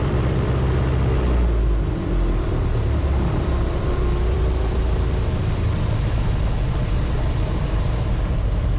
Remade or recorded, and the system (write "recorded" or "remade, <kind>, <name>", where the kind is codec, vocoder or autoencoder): remade, vocoder, BigVGAN v2